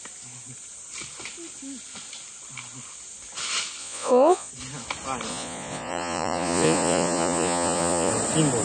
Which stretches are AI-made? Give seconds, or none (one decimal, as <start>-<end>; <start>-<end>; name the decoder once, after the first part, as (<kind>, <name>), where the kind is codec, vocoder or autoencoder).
3.8-4.5 (vocoder, Vocos); 5.3-8.1